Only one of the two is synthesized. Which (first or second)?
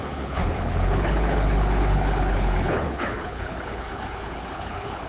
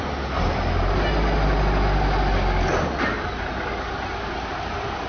first